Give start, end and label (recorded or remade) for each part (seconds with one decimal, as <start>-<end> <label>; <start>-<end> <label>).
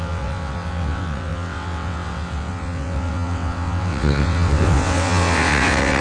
0.0-6.0 remade